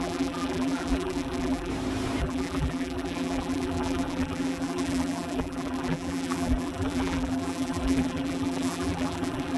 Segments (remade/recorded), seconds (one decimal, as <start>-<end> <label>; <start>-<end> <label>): 0.0-1.7 remade; 1.7-2.2 recorded; 2.2-9.6 remade